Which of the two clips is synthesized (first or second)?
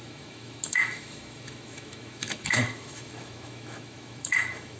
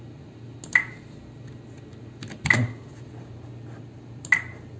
first